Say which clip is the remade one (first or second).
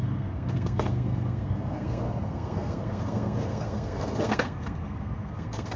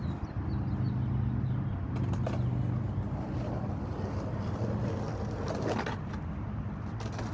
first